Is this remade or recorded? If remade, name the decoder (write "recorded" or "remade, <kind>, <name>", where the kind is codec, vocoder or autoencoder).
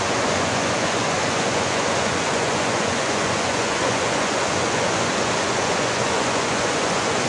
remade, vocoder, Vocos